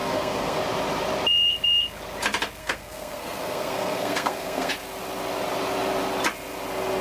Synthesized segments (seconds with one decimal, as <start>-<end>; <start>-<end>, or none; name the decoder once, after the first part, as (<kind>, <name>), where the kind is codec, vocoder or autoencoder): 0.0-0.6 (codec, SNAC); 2.6-4.7